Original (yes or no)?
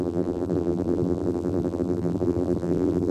no